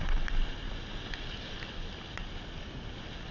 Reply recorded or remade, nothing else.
recorded